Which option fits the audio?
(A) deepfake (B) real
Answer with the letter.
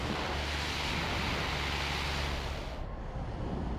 B